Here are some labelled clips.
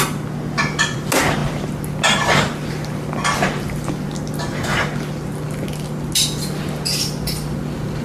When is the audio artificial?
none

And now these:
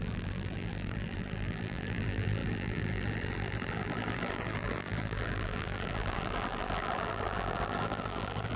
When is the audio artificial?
0.0-8.6 (vocoder, BigVGAN v2)

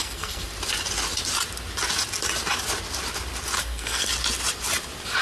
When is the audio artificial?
0.0-0.5 (codec, SNAC); 3.6-4.1

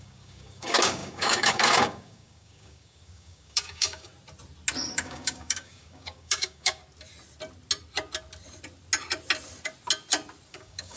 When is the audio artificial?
0.0-4.1 (codec, DAC); 4.9-6.8; 10.5-11.0

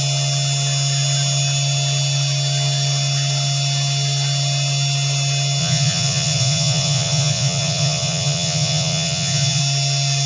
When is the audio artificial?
5.6-9.6 (vocoder, Vocos)